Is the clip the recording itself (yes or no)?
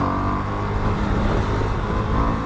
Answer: yes